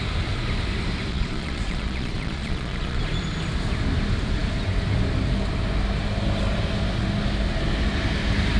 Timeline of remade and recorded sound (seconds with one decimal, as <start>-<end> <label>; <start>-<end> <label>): 0.0-1.1 recorded; 1.1-3.0 remade; 3.0-8.6 recorded